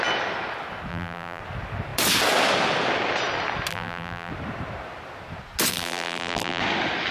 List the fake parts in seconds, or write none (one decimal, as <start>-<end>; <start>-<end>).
0.9-1.4; 3.7-4.3; 5.7-6.6